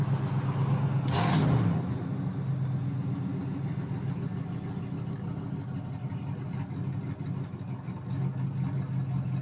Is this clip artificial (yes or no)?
no